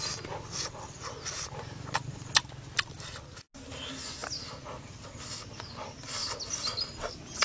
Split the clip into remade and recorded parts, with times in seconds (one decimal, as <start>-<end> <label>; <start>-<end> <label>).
0.0-7.4 recorded

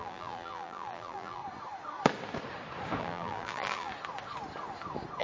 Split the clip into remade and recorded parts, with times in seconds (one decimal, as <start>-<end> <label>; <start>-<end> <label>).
0.0-1.4 remade; 1.4-3.0 recorded; 3.0-3.9 remade; 3.9-5.2 recorded